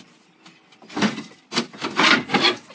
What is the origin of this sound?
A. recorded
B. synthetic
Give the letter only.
A